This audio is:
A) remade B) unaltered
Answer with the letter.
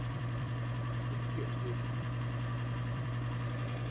A